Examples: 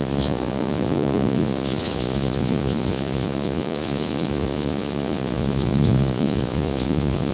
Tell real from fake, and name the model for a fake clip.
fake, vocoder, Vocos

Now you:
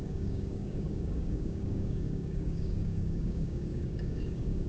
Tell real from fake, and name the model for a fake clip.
fake, codec, DAC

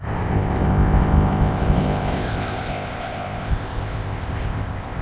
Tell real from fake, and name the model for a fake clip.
fake, codec, ZipCodec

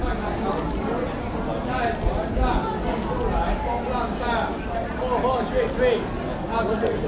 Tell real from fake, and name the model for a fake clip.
real